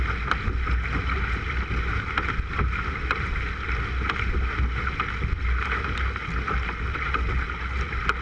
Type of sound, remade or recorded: recorded